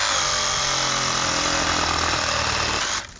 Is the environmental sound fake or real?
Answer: real